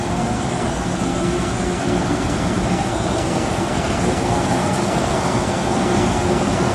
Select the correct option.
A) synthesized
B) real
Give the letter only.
A